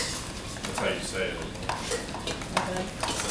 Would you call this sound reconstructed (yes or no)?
no